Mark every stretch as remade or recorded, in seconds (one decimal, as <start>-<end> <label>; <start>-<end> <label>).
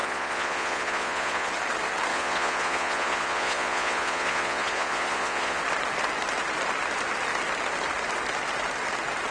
0.0-1.5 remade; 1.5-2.1 recorded; 2.1-5.6 remade; 5.6-9.3 recorded